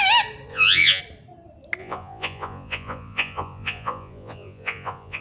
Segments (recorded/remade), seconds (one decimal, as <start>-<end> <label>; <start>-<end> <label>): 0.0-0.5 recorded; 0.5-1.0 remade; 1.0-1.8 recorded; 1.8-5.2 remade